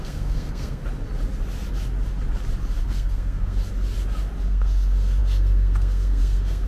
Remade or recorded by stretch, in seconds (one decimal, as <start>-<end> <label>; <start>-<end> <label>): 0.0-0.8 remade; 0.8-2.8 recorded; 2.8-3.6 remade; 3.6-4.5 recorded; 4.5-6.7 remade